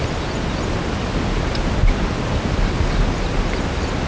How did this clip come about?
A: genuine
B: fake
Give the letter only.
A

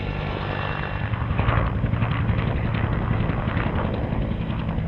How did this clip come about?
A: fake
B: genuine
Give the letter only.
B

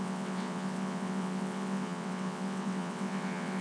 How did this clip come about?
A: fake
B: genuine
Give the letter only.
A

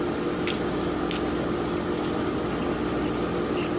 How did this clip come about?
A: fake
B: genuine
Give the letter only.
B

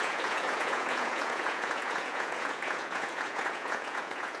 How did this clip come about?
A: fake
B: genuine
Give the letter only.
A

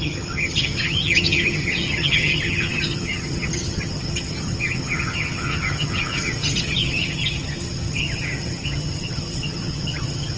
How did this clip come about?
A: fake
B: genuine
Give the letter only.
A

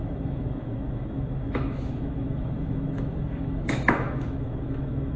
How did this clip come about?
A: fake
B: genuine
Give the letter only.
A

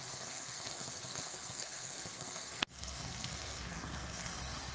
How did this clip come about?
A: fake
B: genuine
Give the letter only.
A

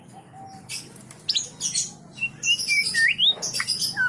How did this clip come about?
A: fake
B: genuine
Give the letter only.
B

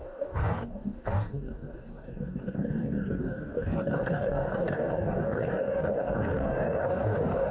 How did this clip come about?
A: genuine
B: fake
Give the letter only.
B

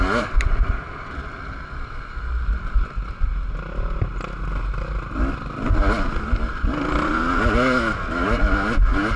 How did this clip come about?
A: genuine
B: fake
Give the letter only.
A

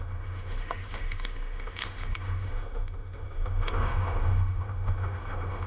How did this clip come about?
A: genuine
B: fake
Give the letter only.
B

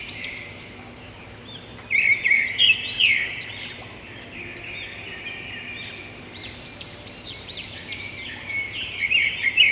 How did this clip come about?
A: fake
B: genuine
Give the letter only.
A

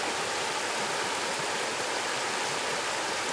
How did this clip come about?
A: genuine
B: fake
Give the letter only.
A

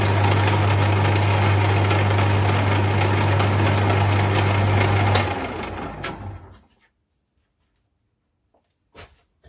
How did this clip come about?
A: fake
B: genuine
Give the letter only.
B